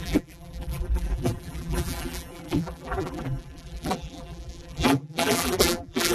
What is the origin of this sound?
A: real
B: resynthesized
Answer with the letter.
B